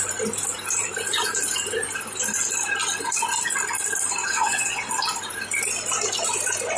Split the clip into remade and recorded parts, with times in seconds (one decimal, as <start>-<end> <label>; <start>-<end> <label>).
0.0-4.2 recorded; 4.2-4.9 remade; 4.9-6.8 recorded